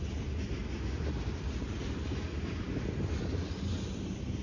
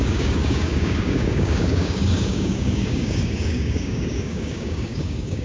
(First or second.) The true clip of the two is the first